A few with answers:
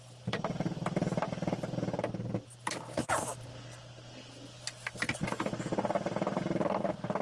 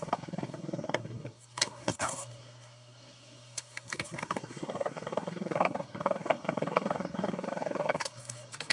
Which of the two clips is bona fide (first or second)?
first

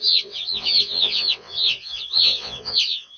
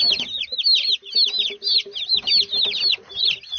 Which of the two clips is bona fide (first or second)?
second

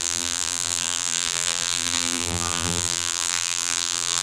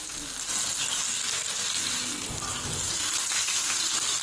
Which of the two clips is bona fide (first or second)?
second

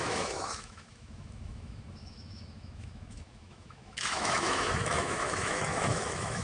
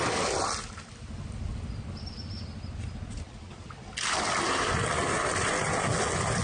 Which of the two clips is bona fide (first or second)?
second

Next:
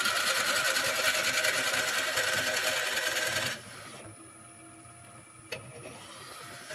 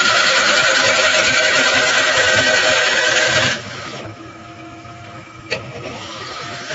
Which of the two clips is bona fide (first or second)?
first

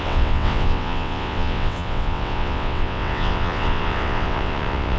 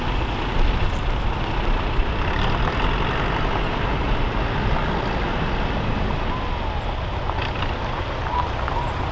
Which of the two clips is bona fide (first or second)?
second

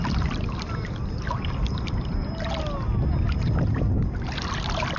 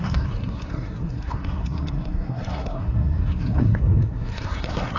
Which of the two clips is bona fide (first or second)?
first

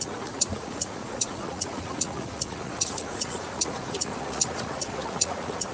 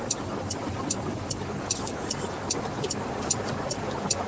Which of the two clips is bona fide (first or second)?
second